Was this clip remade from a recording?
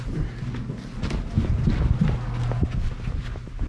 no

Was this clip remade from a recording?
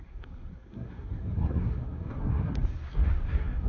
yes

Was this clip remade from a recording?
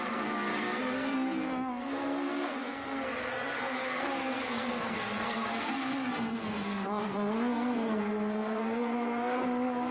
yes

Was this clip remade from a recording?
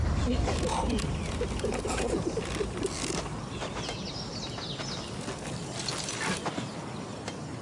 no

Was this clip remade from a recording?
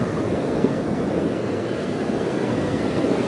yes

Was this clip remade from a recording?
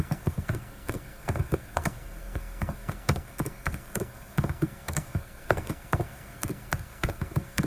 yes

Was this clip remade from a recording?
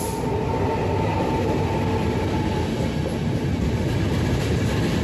no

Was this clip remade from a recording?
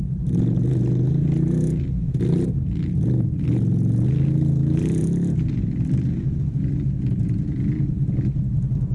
no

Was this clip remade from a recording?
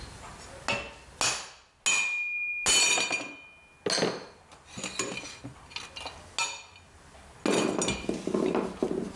no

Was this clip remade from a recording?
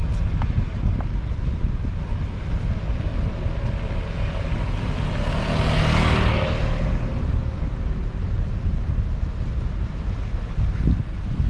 no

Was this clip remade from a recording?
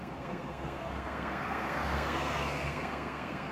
yes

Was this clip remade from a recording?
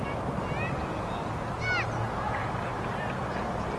no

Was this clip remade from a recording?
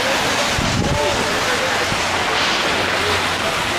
no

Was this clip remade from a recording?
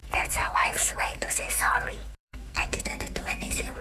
yes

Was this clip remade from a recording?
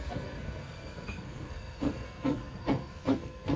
yes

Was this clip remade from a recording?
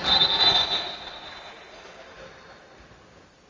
no